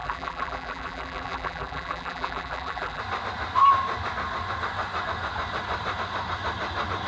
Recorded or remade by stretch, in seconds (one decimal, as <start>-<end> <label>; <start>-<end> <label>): 0.0-3.0 remade; 3.0-7.1 recorded